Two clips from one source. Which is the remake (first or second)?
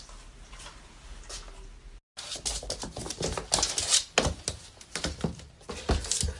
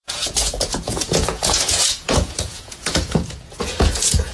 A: second